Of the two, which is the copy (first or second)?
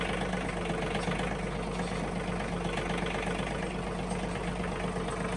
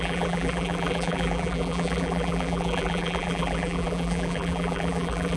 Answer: second